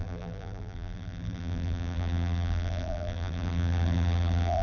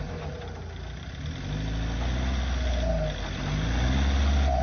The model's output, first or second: first